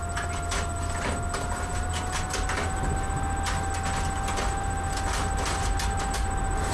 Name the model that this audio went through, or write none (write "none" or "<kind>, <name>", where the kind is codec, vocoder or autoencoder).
none